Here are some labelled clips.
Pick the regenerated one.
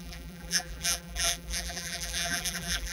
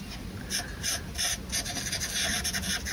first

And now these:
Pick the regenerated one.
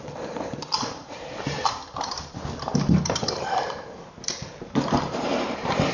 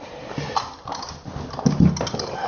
first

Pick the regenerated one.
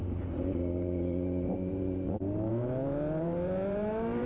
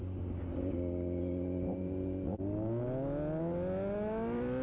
first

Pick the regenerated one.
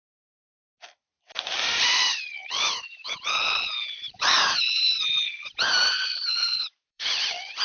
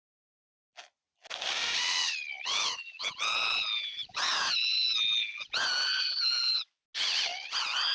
first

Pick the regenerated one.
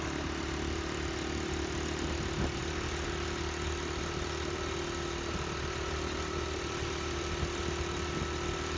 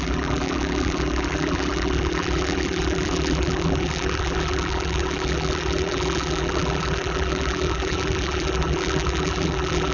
second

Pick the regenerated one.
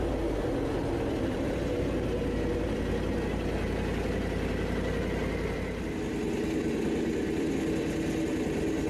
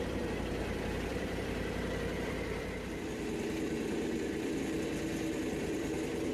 second